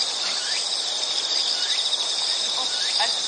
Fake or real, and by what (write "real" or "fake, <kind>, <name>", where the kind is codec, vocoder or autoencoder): real